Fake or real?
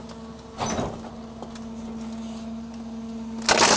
real